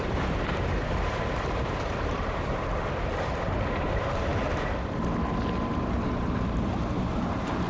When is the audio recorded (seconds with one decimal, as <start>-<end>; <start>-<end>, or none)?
4.3-5.8